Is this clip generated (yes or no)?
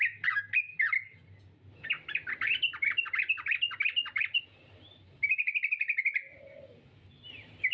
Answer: no